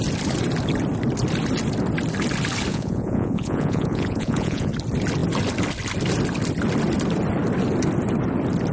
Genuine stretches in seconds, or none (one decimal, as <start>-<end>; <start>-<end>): 0.0-2.7; 4.7-8.7